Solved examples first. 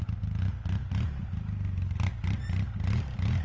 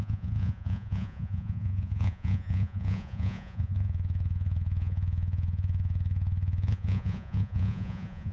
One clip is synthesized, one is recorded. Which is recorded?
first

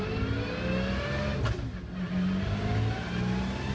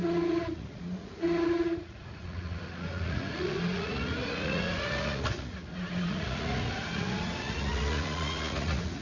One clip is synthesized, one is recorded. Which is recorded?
first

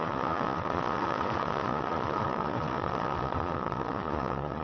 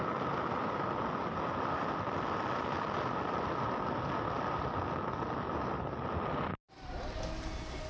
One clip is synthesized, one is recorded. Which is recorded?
second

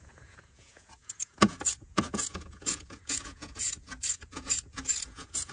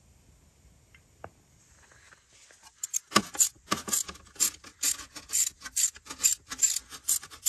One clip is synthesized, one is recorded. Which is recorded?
second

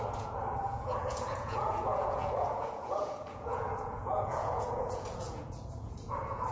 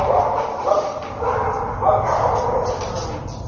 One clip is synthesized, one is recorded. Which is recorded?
second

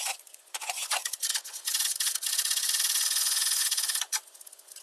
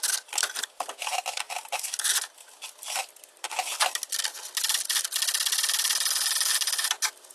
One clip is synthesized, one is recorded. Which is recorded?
second